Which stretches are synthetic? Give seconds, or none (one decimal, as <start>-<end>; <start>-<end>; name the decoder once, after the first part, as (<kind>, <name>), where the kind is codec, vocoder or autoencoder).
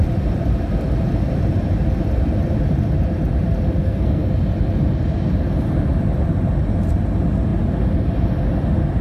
3.8-4.3 (codec, SNAC)